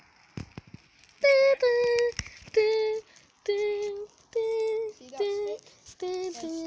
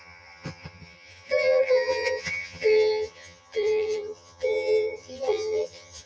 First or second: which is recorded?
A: first